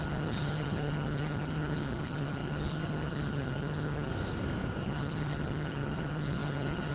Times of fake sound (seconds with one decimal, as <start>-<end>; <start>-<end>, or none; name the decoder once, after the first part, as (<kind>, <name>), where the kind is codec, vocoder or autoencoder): 0.0-4.1 (vocoder, HiFi-GAN); 4.8-6.9